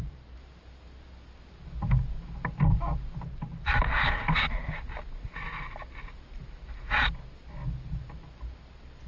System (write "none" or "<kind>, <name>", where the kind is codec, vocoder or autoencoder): none